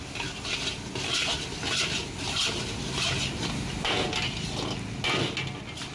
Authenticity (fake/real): real